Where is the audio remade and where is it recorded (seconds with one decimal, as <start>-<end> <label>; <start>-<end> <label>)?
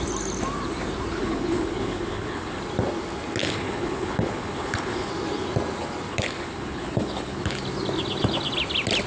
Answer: 0.0-1.2 recorded; 1.2-2.6 remade; 2.6-3.4 recorded; 3.4-5.1 remade; 5.1-6.1 recorded; 6.1-7.6 remade; 7.6-9.1 recorded